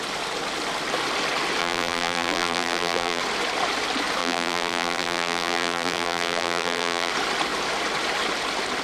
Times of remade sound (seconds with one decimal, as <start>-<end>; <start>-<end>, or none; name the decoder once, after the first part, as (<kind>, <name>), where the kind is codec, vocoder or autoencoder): 1.6-3.2 (vocoder, BigVGAN v2); 4.2-7.1

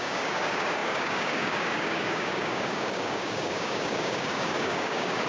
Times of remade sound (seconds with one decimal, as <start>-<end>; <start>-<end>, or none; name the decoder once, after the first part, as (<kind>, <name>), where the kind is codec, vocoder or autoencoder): 0.0-5.3 (codec, DAC)

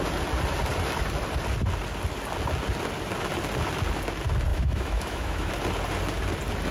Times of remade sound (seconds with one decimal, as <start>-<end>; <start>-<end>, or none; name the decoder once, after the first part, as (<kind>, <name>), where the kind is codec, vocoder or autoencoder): 4.5-5.5 (autoencoder, DAC-VAE)

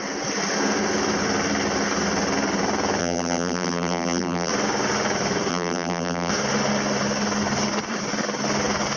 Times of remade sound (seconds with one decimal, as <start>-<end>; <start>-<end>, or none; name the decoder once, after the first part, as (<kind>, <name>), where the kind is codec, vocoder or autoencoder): 3.0-4.5 (vocoder, BigVGAN v2); 5.5-6.3